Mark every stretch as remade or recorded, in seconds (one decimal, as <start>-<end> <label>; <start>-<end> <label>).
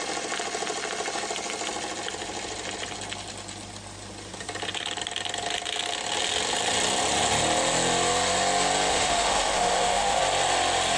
0.0-8.9 recorded; 8.9-10.2 remade; 10.2-11.0 recorded